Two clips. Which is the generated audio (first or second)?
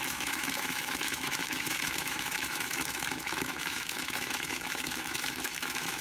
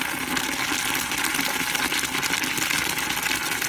first